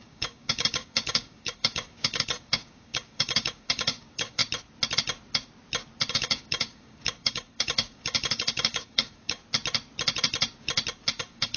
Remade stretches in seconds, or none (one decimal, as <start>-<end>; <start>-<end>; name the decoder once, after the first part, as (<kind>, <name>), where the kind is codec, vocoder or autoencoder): 0.0-4.4 (codec, DAC); 6.1-9.4; 11.2-11.6